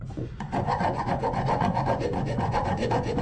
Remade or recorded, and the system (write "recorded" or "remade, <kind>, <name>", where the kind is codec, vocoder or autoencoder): remade, vocoder, Vocos